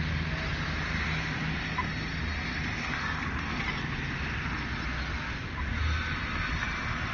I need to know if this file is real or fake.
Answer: real